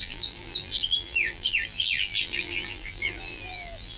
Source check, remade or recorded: remade